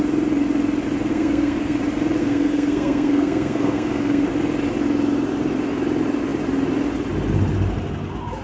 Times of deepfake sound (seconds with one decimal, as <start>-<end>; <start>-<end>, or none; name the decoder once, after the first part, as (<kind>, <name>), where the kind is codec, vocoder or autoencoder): 1.1-1.8 (codec, SNAC); 2.2-4.3